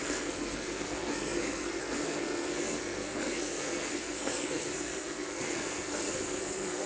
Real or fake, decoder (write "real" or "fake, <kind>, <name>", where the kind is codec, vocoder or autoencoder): fake, codec, SNAC